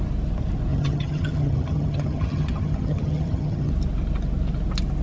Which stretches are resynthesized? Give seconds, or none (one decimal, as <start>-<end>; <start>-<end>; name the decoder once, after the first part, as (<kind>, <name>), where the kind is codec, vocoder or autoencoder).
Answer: 0.7-3.7 (vocoder, HiFi-GAN)